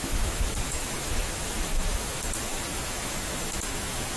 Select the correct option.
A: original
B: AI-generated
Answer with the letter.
B